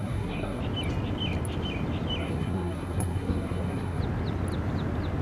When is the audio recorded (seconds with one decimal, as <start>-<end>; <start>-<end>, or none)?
0.6-2.2; 4.0-5.2